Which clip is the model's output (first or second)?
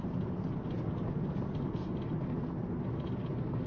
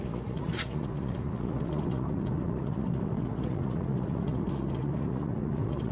second